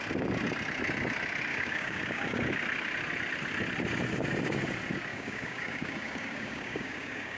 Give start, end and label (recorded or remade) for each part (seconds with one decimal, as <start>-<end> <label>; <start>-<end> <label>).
0.0-1.5 recorded; 1.5-2.4 remade; 2.4-5.1 recorded; 5.1-7.4 remade